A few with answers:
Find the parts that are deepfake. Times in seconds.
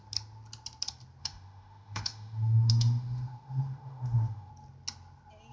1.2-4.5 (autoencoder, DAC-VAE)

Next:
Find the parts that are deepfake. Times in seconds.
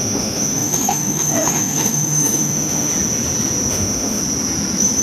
0.0-2.9 (autoencoder, DAC-VAE); 3.7-4.2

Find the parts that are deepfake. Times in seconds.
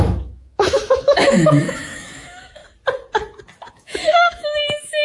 0.0-2.6 (autoencoder, DAC-VAE); 3.7-5.0